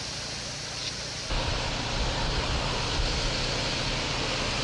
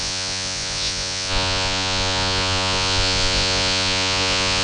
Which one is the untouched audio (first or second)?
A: first